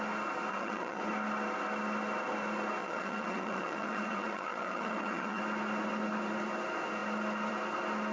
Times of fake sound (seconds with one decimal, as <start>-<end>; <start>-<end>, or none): 0.5-1.0; 2.8-5.4